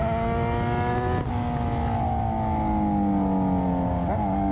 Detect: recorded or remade recorded